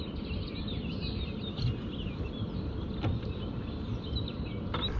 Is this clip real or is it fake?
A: real